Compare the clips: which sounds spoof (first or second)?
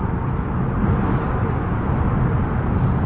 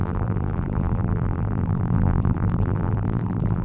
second